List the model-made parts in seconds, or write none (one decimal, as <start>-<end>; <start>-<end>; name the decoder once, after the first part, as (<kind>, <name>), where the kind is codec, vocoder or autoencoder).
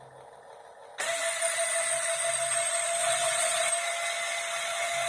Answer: 3.0-3.7 (vocoder, WaveNeXt)